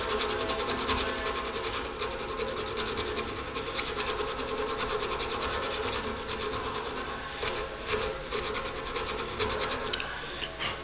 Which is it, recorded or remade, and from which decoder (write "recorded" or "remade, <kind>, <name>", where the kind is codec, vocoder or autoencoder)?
recorded